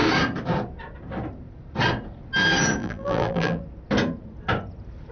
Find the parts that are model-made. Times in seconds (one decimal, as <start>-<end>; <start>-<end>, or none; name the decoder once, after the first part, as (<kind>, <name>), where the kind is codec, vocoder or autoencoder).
2.8-3.6 (vocoder, BigVGAN v2)